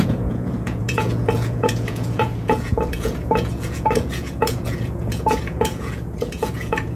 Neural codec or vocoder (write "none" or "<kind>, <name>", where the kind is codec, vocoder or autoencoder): vocoder, Vocos